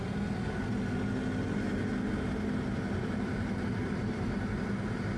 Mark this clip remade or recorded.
recorded